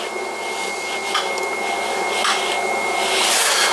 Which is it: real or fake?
real